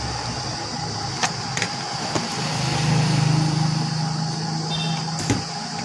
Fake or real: real